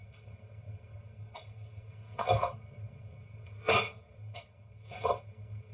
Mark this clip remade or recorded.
remade